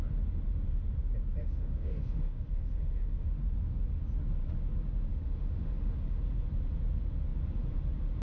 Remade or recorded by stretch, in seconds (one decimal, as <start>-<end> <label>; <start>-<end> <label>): 0.0-1.4 recorded; 1.4-3.4 remade; 3.4-5.1 recorded; 5.1-6.2 remade; 6.2-8.2 recorded

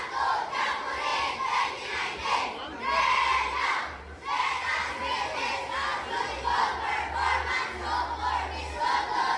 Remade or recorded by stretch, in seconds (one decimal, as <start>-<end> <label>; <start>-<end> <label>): 0.0-1.1 recorded; 1.1-2.8 remade; 2.8-3.3 recorded; 3.3-5.0 remade; 5.0-9.4 recorded

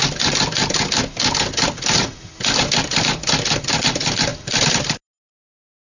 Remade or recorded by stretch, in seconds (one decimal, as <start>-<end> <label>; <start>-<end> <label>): 0.0-5.9 recorded

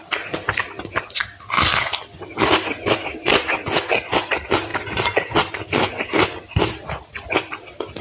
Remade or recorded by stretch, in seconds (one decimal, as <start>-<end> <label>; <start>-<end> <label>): 0.0-8.0 recorded

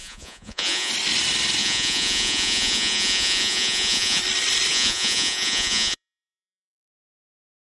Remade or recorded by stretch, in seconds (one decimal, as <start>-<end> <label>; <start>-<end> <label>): 0.0-0.9 remade; 0.9-1.6 recorded; 1.6-4.2 remade; 4.2-4.7 recorded; 4.7-7.2 remade; 7.2-7.7 recorded

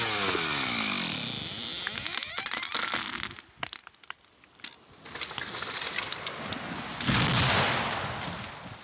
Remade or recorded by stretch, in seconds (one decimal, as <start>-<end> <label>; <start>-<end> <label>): 0.0-8.8 recorded

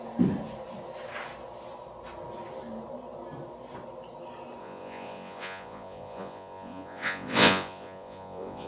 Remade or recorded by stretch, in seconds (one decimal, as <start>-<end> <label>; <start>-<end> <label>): 0.0-4.6 recorded; 4.6-8.7 remade

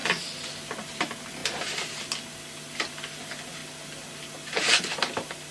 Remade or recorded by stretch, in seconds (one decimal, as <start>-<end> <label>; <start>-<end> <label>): 0.0-5.5 recorded